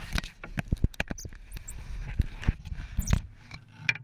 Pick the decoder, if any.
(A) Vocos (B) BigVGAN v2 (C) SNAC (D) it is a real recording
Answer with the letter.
D